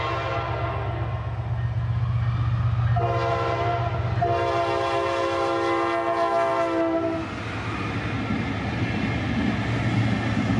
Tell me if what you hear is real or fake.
real